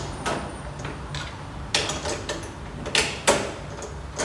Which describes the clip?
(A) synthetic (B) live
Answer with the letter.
B